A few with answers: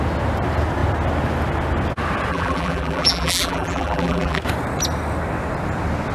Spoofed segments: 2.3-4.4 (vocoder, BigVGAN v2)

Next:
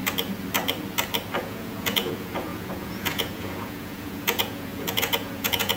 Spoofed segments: 1.4-5.8 (vocoder, Vocos)

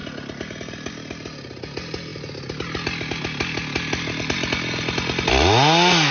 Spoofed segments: none

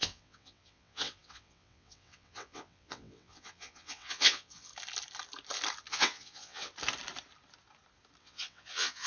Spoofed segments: 0.0-4.7 (vocoder, WaveNeXt); 5.9-6.7; 8.2-9.1